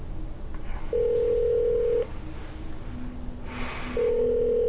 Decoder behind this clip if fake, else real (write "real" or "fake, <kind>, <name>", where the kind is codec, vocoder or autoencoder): real